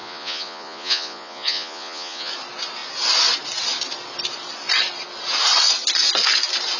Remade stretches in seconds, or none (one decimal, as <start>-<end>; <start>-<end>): 0.0-2.3